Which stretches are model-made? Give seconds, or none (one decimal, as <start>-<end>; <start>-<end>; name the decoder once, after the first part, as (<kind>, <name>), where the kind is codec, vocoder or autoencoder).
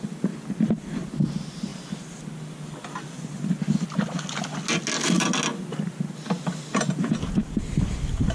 5.5-6.0 (vocoder, BigVGAN v2)